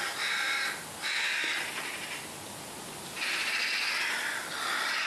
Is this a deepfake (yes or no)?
no